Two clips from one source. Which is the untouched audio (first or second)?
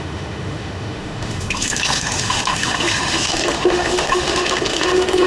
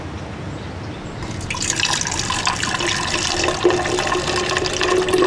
second